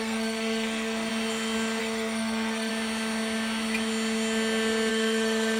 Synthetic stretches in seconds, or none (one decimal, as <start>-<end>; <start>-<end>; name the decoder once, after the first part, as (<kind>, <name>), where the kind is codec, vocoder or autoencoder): 0.0-1.1 (codec, SNAC); 1.8-2.7; 4.9-5.6